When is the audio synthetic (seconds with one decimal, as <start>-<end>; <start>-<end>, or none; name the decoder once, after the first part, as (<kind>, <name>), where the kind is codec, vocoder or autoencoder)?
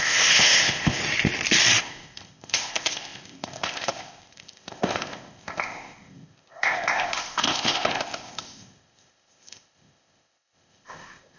0.0-1.0 (codec, ZipCodec); 1.8-11.4